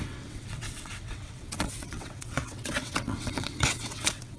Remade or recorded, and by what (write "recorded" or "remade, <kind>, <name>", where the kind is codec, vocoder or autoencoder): remade, vocoder, WaveNeXt